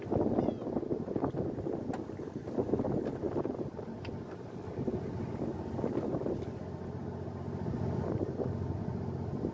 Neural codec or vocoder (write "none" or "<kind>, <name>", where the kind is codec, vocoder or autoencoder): none